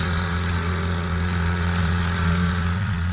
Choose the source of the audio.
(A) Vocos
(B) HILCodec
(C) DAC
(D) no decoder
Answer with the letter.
A